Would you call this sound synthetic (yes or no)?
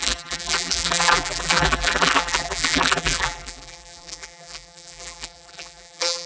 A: yes